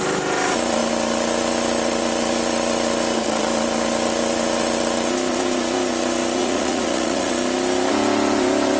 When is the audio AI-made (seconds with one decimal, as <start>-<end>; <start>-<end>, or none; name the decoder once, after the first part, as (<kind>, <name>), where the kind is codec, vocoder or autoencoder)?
6.4-7.3 (vocoder, Vocos)